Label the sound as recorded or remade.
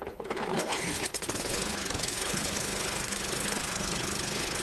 remade